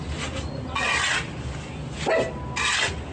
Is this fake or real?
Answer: real